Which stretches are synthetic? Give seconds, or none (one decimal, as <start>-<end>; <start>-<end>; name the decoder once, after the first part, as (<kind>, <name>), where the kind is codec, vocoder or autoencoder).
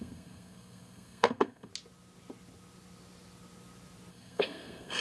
0.0-1.7 (codec, SNAC); 4.1-5.0